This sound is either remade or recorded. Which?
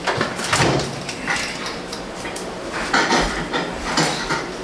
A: remade